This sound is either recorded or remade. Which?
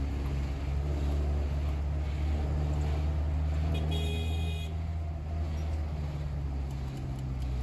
recorded